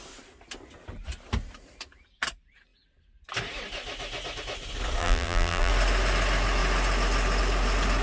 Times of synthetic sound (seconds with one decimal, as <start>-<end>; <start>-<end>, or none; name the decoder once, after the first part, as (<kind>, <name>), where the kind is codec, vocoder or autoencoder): 5.0-5.7 (vocoder, BigVGAN v2)